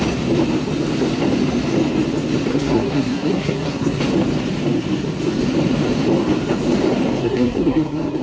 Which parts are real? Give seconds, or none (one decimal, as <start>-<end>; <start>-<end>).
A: 0.0-2.5; 4.0-7.2